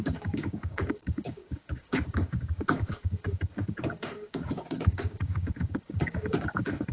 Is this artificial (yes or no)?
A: yes